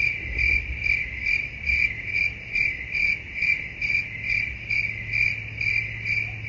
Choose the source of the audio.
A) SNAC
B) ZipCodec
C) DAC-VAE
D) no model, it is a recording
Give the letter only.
D